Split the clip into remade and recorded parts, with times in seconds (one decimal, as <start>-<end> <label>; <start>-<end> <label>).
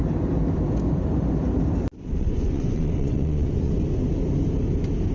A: 0.0-2.1 recorded; 2.1-3.7 remade; 3.7-5.1 recorded